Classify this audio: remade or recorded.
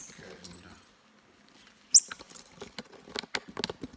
recorded